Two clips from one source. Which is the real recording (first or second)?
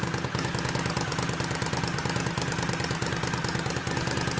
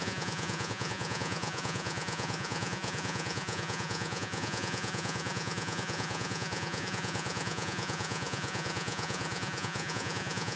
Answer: first